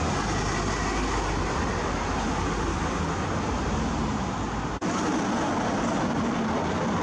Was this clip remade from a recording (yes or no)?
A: no